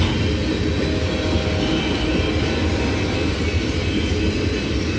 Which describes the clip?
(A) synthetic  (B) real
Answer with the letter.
B